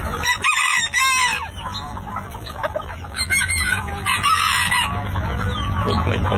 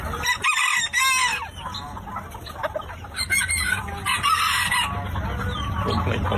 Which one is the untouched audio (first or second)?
second